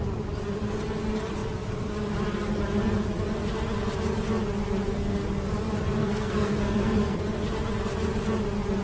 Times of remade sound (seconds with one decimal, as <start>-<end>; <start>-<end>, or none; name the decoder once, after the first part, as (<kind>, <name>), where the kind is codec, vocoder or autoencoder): 6.0-7.2 (codec, SNAC)